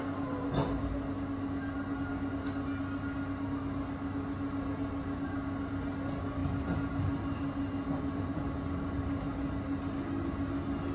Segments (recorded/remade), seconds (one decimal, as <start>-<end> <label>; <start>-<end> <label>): 0.0-10.9 recorded